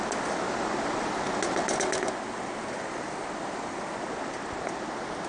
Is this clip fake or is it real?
real